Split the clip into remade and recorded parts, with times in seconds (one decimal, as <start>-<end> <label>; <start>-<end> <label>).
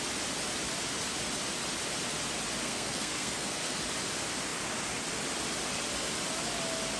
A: 0.0-2.6 recorded; 2.6-3.8 remade; 3.8-7.0 recorded